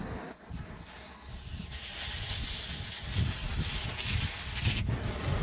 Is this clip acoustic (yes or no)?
yes